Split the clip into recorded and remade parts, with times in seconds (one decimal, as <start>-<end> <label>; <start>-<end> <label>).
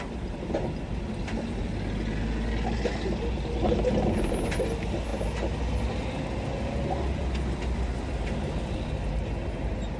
0.0-10.0 recorded